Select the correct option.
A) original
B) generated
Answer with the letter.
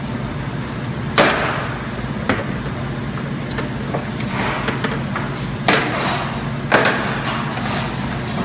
A